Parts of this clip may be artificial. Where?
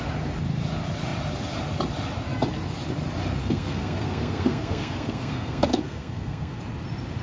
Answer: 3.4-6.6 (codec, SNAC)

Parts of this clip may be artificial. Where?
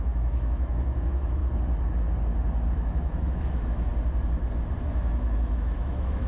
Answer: 0.0-1.4 (autoencoder, DAC-VAE); 2.7-3.9; 4.8-6.3